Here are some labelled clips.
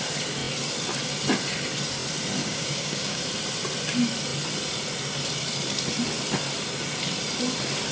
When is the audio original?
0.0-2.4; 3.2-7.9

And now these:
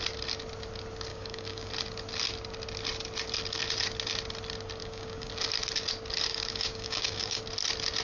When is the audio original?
0.0-1.1; 1.7-4.8; 5.3-6.3; 7.4-8.0

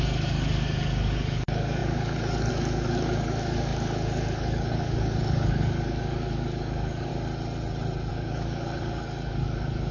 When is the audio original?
7.1-8.1

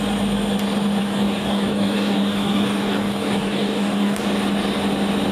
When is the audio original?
0.0-1.0; 4.2-5.3